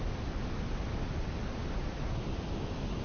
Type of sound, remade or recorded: recorded